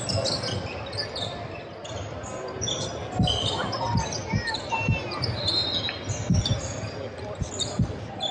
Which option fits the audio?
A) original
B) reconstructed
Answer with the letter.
A